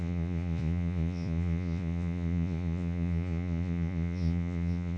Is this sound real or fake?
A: fake